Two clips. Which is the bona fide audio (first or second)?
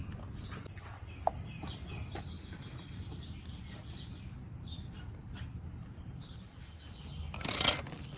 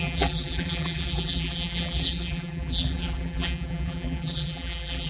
first